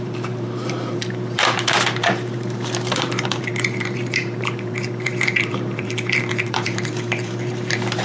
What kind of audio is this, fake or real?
fake